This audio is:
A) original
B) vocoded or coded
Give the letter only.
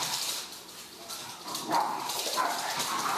B